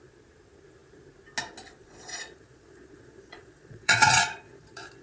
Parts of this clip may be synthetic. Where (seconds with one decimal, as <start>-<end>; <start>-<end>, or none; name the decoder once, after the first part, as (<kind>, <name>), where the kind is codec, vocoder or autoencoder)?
1.8-5.0 (vocoder, Vocos)